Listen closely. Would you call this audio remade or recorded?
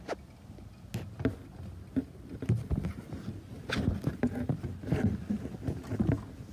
recorded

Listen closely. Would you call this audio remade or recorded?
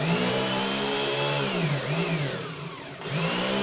remade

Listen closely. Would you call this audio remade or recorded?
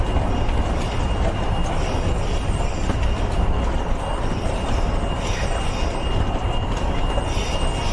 recorded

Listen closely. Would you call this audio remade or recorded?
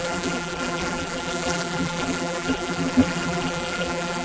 remade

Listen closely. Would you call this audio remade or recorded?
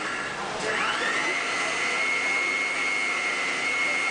recorded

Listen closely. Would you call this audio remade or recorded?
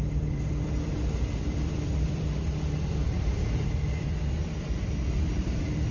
remade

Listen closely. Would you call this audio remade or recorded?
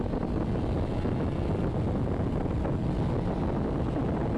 recorded